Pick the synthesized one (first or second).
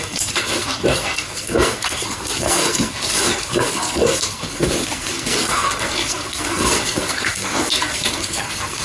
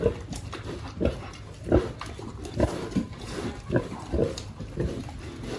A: first